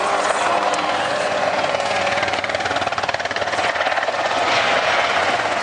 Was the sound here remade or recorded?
remade